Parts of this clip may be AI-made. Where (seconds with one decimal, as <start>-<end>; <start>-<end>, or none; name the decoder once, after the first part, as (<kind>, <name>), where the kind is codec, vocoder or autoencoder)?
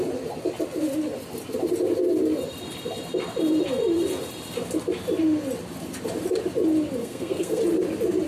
7.0-7.6 (codec, SNAC)